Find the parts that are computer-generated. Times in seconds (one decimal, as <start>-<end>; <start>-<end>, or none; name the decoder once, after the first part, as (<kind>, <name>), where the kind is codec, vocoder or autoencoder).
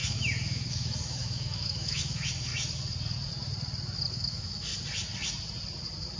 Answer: 0.0-2.5 (autoencoder, DAC-VAE); 4.1-4.7